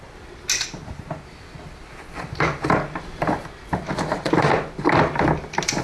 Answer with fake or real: real